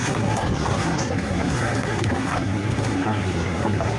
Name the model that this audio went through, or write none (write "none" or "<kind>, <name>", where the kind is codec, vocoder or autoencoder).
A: codec, SNAC